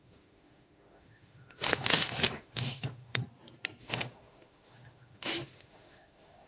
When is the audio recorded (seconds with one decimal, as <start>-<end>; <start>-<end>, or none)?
3.2-3.8